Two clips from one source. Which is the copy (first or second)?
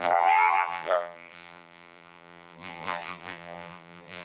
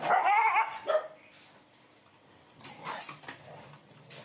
first